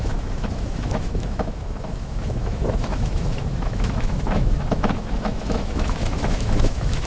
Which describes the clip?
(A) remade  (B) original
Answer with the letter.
A